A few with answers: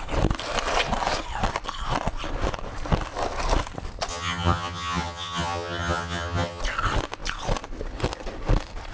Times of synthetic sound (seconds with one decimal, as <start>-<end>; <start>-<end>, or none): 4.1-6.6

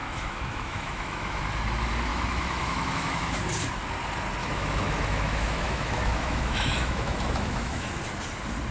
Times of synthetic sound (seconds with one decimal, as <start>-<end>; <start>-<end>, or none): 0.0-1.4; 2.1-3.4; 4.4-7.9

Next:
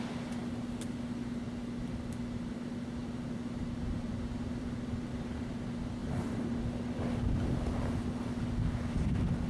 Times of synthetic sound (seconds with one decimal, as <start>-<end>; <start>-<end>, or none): 3.0-5.5; 6.0-6.6

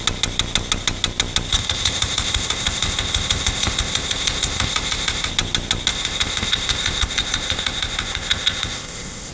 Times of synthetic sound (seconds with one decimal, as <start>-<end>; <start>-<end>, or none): 1.5-5.3; 5.9-9.3